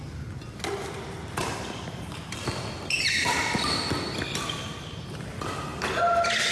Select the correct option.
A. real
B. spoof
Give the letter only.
A